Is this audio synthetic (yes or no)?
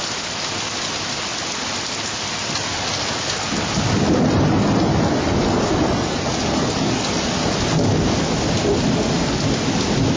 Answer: no